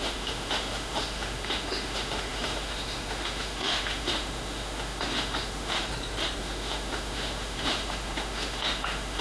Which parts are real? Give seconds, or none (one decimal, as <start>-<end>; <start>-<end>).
5.9-6.4